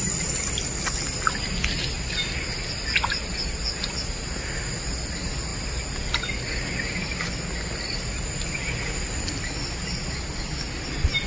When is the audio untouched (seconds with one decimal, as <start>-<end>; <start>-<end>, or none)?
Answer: 0.0-11.3